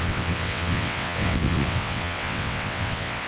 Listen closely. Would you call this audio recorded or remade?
remade